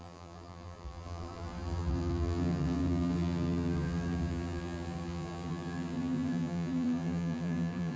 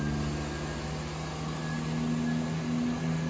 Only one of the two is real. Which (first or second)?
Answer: second